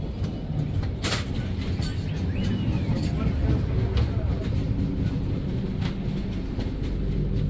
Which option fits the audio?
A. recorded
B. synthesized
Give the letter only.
A